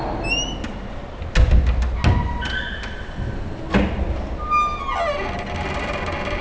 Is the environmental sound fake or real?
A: real